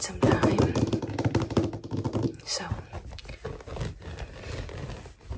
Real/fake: real